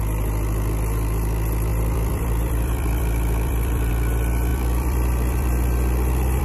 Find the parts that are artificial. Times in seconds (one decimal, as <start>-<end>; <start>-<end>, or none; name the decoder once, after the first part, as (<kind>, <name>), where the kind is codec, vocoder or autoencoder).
1.7-3.9 (vocoder, BigVGAN v2); 4.5-6.4